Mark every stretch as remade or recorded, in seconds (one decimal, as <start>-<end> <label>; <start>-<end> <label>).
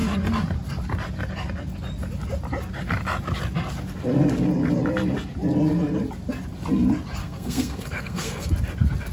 0.0-7.2 recorded; 7.2-8.5 remade; 8.5-9.1 recorded